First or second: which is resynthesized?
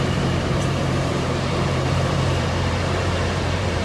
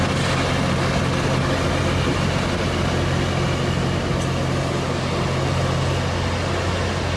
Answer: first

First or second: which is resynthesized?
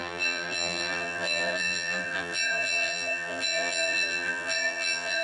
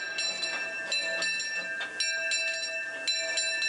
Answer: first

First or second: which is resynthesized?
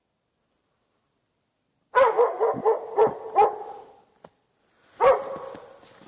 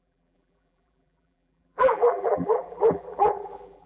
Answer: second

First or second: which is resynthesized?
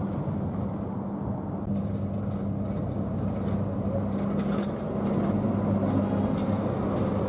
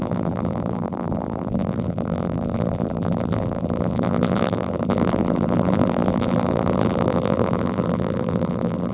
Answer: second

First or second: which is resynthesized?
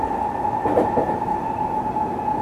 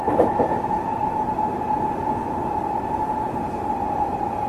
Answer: second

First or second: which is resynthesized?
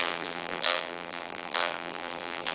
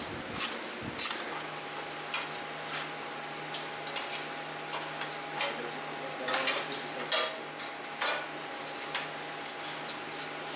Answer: first